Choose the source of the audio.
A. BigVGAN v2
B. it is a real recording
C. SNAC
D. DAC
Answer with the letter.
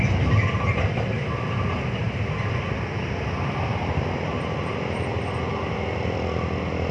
B